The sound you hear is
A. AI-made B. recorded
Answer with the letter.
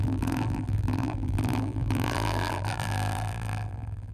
A